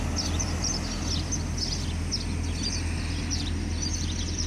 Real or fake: real